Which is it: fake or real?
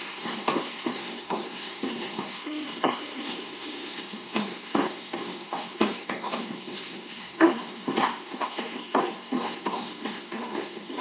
fake